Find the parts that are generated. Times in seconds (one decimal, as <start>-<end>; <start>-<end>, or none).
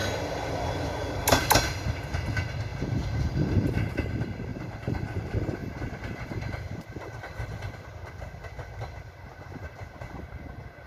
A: 2.7-3.9; 4.5-5.0; 5.6-10.4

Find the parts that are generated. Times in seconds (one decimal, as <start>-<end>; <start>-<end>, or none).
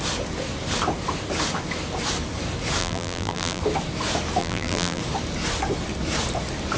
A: 2.8-3.6; 4.4-5.0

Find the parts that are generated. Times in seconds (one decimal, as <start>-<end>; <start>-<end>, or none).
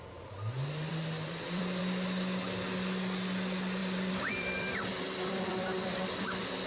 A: 0.9-1.8; 3.8-5.5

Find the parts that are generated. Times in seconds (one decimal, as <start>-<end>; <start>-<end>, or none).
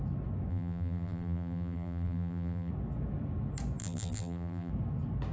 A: 0.5-2.7; 3.8-4.7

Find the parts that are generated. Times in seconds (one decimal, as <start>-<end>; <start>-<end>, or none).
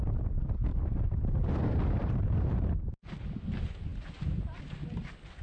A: 0.7-1.6; 2.0-3.2; 3.9-4.6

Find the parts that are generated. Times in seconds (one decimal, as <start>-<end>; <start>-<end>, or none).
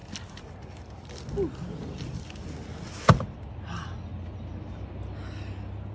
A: 4.1-4.9